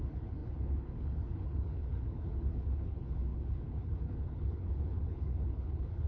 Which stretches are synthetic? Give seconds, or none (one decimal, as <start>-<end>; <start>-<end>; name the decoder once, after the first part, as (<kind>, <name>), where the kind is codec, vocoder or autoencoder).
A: 0.0-6.1 (codec, HILCodec)